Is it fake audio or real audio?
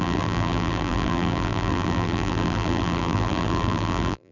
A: fake